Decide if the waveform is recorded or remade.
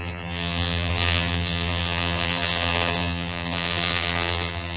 remade